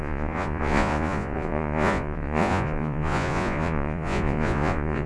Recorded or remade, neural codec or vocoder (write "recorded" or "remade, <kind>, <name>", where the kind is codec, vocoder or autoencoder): remade, vocoder, Vocos